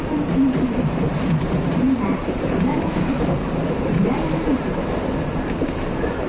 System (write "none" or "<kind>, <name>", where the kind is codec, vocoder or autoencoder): vocoder, BigVGAN v2